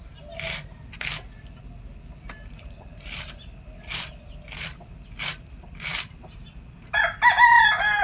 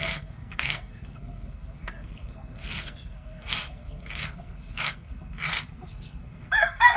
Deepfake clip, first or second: second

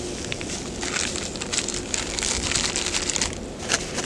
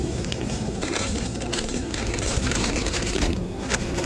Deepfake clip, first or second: second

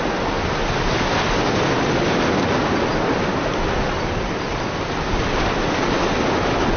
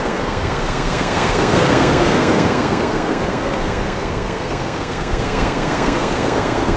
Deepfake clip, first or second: second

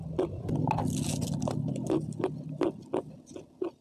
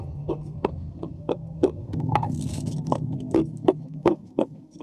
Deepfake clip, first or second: second